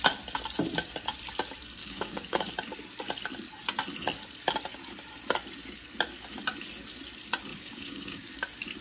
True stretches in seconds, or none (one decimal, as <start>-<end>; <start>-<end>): 0.0-1.8; 2.5-7.5; 8.3-8.8